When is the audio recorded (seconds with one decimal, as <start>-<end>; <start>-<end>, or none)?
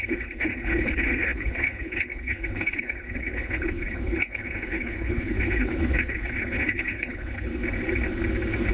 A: 7.5-8.7